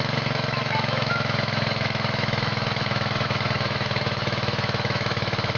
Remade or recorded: remade